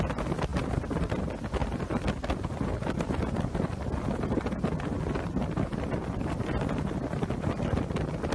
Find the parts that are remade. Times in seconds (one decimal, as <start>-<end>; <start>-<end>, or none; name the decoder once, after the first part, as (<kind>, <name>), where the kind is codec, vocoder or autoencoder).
none